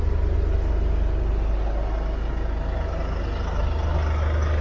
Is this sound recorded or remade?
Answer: recorded